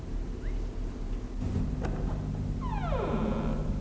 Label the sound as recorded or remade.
recorded